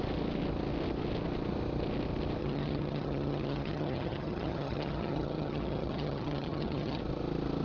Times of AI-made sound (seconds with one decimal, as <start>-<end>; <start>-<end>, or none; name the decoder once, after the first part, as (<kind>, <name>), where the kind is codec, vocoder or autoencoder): 2.4-7.0 (vocoder, HiFi-GAN)